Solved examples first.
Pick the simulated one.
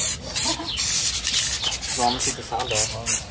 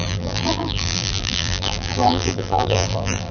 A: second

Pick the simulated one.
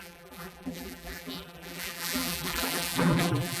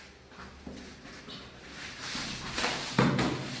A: first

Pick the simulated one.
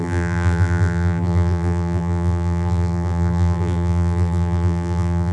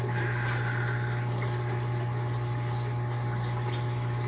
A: first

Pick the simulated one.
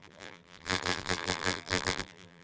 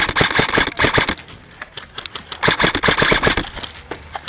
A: first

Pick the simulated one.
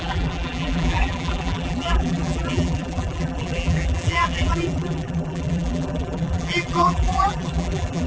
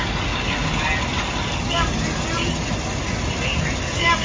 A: first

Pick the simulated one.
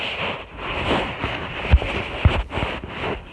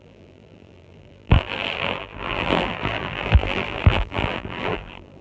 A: second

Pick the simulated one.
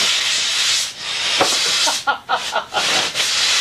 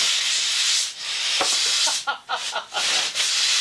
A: second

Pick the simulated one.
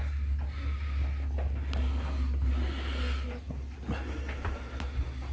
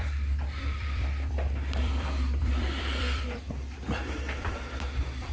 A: second